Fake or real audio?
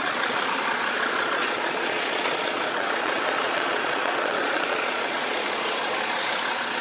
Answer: fake